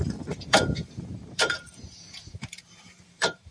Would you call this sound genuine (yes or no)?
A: no